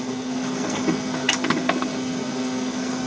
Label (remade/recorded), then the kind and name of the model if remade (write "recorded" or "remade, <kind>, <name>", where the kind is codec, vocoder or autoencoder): remade, codec, SNAC